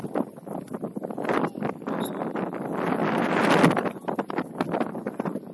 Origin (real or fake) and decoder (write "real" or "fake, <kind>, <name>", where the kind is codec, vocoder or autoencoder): real